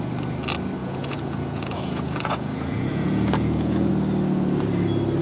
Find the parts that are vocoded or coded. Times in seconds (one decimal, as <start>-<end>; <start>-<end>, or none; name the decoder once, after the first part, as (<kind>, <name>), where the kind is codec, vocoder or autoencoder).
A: 0.8-3.9 (vocoder, Vocos)